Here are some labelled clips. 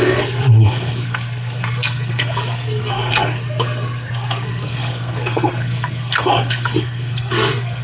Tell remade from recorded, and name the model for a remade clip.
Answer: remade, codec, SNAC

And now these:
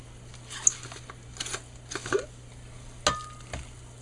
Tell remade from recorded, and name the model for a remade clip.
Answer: recorded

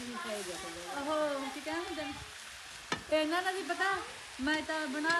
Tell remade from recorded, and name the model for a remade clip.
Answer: recorded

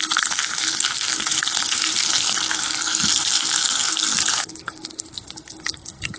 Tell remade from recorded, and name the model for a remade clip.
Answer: remade, codec, SNAC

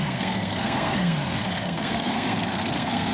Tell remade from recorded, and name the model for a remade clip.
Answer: remade, codec, SNAC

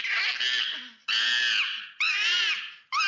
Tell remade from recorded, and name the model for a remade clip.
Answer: recorded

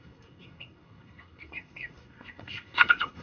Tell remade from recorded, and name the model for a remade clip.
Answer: remade, codec, SNAC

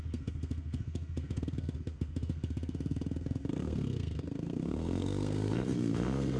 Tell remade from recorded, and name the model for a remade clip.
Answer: remade, codec, SNAC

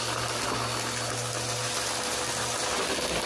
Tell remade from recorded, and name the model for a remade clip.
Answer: recorded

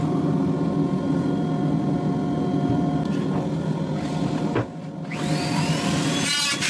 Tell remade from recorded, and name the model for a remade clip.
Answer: recorded